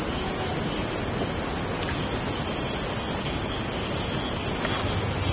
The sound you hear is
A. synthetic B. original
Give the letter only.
B